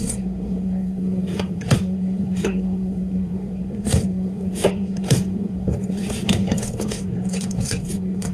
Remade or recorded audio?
remade